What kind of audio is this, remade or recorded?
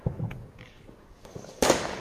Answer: remade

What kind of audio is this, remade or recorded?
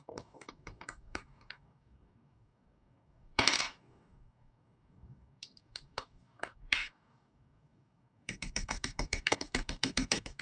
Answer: remade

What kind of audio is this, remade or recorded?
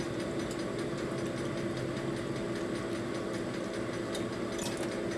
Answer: recorded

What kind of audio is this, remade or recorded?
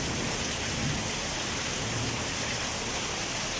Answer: recorded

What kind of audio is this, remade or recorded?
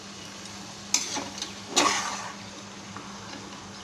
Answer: recorded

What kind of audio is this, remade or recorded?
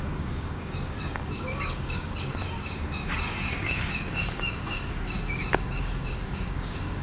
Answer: remade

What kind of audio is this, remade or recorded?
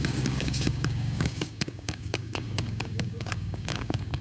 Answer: remade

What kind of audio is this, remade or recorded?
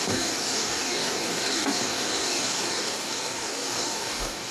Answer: remade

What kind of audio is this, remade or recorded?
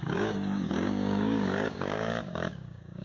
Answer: remade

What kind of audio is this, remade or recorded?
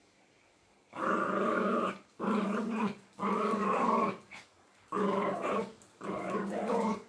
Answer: remade